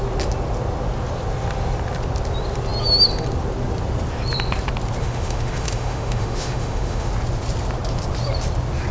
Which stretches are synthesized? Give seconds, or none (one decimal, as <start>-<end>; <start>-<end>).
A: 5.0-7.1